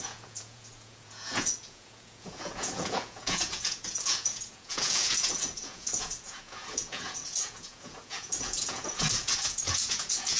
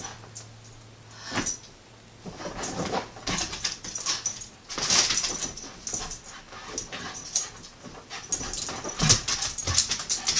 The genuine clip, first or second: second